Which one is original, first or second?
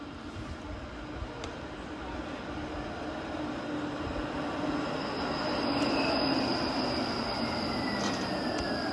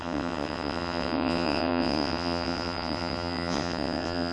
first